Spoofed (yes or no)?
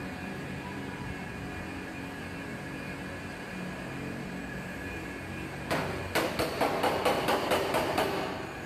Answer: yes